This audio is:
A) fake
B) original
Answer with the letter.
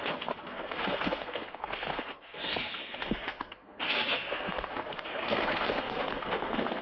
A